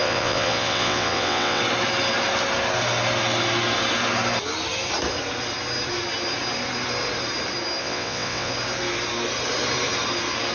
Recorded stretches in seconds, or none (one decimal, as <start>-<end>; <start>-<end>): 1.6-7.8; 8.5-10.5